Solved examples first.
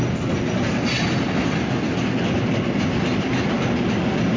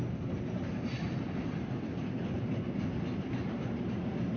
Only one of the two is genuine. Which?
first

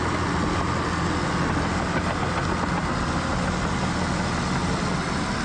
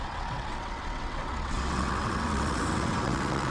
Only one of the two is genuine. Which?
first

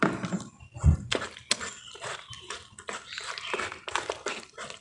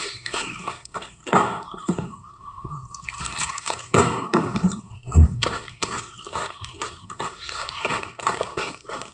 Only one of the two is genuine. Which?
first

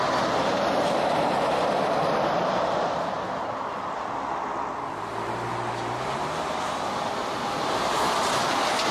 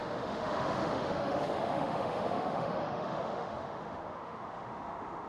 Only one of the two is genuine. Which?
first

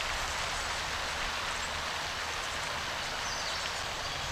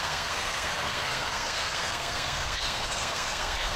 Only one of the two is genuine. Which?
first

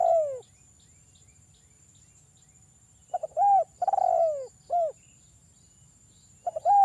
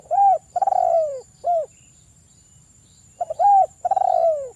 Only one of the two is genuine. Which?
first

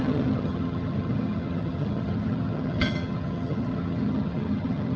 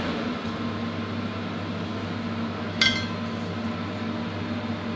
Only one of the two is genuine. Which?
second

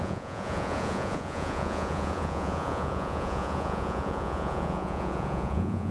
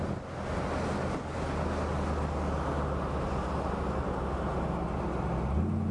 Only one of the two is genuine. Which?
second